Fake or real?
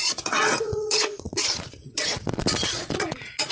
fake